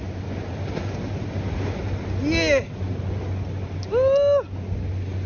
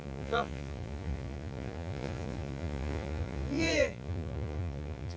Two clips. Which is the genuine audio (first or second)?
first